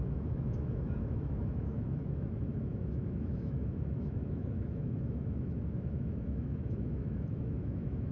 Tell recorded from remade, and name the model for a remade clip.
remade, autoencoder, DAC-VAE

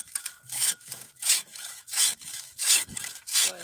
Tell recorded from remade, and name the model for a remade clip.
remade, autoencoder, DAC-VAE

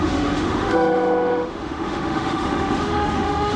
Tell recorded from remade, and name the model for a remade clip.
remade, autoencoder, DAC-VAE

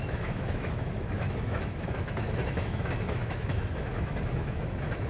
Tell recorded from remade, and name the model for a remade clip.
remade, autoencoder, DAC-VAE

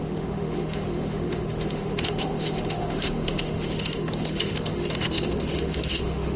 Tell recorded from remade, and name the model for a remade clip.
remade, autoencoder, DAC-VAE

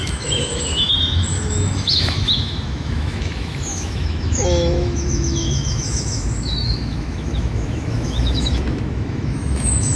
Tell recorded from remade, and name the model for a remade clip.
remade, autoencoder, DAC-VAE